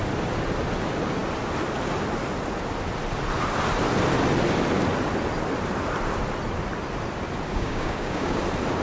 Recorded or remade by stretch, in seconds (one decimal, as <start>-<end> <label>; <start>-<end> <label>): 0.0-7.5 recorded; 7.5-8.4 remade; 8.4-8.8 recorded